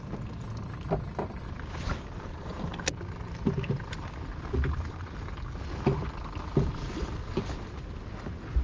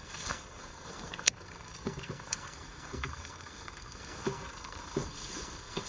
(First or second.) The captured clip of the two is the first